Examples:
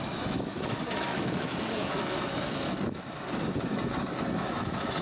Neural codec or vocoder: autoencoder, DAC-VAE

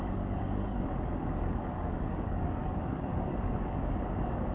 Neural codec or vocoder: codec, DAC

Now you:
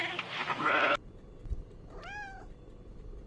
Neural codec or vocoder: none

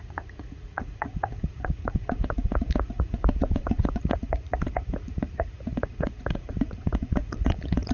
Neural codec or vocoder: vocoder, Vocos